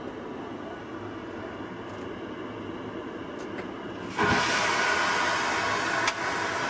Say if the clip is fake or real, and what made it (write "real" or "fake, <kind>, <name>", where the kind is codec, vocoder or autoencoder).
real